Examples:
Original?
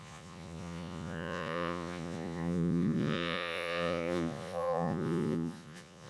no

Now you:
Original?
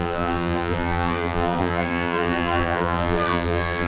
no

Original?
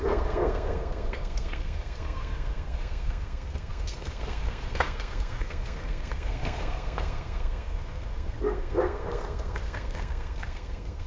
no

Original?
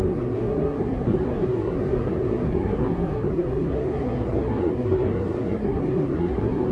no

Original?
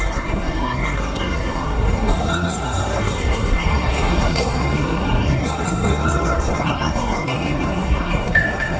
no